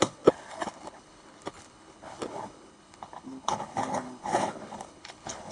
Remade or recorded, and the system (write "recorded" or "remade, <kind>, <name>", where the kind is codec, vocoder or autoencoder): remade, codec, HILCodec